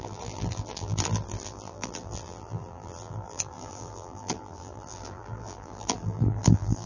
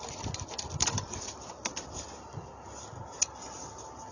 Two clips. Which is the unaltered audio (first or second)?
second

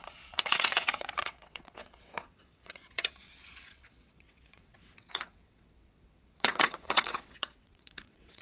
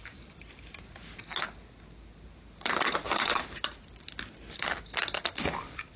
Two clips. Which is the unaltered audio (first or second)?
second